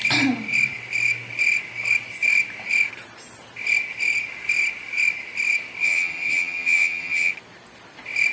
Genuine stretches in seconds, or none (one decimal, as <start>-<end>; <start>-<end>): 0.0-5.8; 7.3-8.3